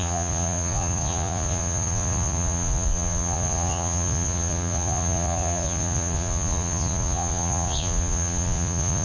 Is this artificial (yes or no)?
yes